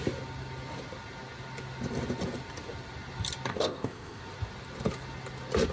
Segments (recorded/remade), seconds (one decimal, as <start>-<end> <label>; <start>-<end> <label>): 0.0-3.5 recorded; 3.5-4.2 remade; 4.2-5.7 recorded